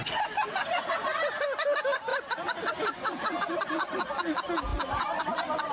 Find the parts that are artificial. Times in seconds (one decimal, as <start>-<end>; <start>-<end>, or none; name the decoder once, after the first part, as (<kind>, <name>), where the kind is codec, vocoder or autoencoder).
2.1-3.3 (vocoder, BigVGAN v2); 4.7-5.7